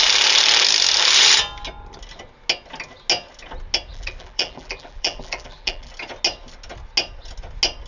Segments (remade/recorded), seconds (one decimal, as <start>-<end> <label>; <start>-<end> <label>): 0.0-3.9 recorded; 3.9-5.9 remade; 5.9-7.9 recorded